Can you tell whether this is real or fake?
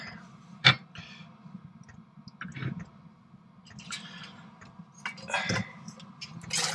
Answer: real